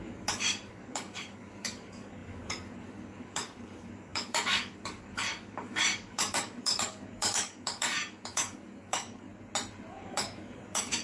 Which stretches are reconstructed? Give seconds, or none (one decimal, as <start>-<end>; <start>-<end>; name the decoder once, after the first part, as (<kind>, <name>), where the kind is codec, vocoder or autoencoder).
0.0-9.3 (codec, DAC); 9.9-11.0